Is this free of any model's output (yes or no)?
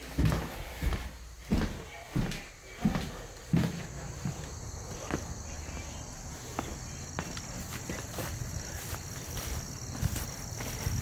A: yes